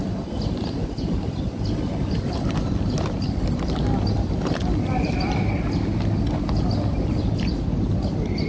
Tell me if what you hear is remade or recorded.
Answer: recorded